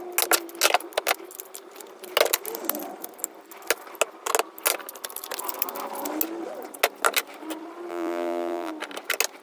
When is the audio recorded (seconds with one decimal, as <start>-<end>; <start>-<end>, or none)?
0.0-7.9; 8.7-9.4